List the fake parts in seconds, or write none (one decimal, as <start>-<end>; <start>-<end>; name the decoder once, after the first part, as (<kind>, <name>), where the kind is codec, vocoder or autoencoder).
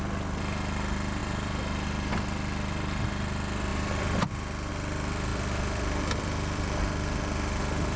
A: 1.2-2.1 (vocoder, BigVGAN v2); 3.7-4.7; 5.3-7.6